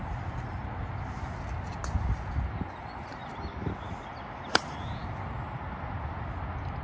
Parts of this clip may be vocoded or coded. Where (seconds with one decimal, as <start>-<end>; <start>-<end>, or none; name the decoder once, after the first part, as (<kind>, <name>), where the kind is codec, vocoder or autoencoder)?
none